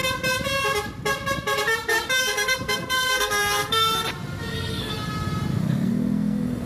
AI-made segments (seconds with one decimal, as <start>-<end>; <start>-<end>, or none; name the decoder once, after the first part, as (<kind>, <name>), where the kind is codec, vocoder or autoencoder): 2.2-3.9 (codec, SNAC); 4.5-4.9; 5.6-6.7